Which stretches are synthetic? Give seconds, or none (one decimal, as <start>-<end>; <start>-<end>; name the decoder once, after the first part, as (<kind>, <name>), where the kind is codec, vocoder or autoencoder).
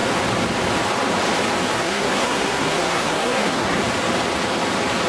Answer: 1.7-3.8 (codec, SNAC)